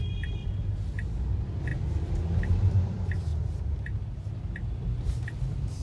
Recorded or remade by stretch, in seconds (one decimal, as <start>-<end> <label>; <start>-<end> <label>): 0.0-0.4 remade; 0.4-1.2 recorded; 1.2-1.7 remade; 1.7-2.7 recorded; 2.7-5.8 remade